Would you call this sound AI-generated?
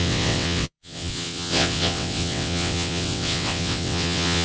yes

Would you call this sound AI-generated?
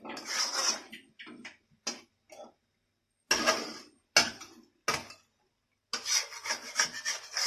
no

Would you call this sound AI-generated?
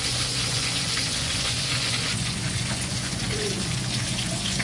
yes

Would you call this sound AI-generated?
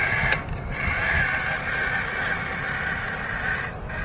no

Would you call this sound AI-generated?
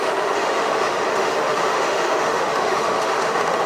yes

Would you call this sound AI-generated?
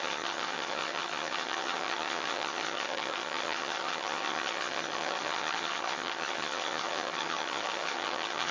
yes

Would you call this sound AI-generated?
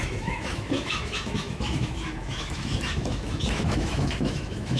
yes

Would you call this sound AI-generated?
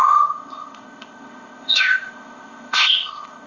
yes